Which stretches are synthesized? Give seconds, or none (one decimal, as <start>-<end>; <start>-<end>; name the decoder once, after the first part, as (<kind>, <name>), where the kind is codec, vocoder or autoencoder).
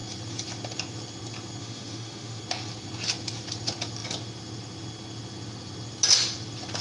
1.6-2.4 (autoencoder, DAC-VAE)